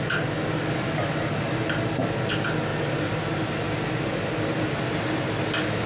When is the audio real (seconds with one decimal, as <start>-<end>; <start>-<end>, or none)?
0.0-2.7; 5.4-5.9